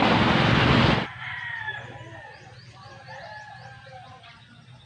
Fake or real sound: real